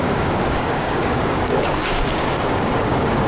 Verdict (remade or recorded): remade